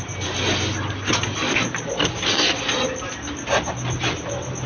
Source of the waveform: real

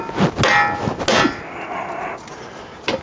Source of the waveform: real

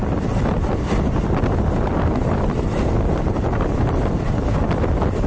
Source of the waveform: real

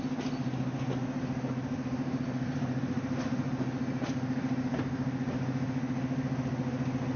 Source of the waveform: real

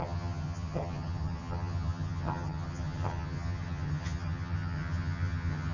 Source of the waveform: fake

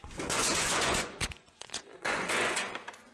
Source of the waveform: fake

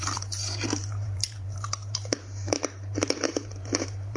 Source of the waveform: fake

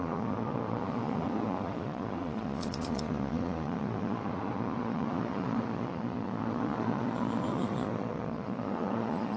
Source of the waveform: fake